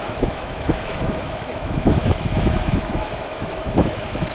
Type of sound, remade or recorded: remade